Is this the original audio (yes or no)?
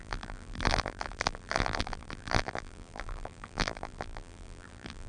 no